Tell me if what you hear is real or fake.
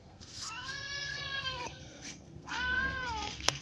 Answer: fake